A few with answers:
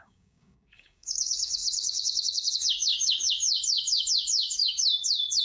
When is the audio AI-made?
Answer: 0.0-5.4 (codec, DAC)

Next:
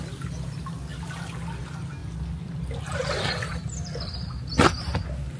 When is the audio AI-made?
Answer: 3.5-4.1 (vocoder, BigVGAN v2)